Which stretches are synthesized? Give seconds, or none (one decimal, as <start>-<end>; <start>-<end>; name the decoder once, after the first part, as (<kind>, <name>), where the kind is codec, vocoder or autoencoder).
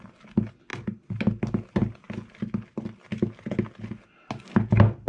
none